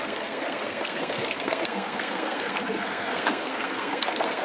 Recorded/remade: remade